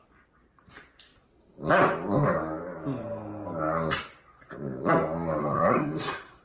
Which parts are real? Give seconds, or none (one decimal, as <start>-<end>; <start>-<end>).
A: 0.0-5.4